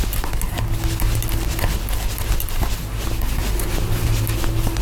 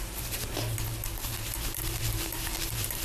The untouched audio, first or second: first